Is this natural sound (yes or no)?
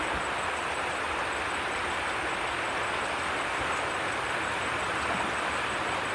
yes